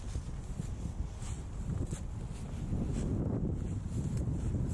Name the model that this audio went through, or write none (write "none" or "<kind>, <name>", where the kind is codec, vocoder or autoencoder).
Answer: none